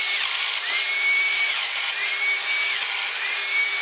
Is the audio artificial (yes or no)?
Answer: yes